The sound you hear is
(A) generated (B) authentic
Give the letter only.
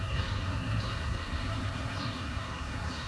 A